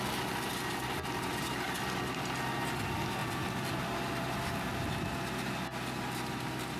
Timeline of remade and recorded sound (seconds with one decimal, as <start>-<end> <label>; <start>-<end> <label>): 0.0-3.2 recorded; 3.2-3.8 remade; 3.8-6.8 recorded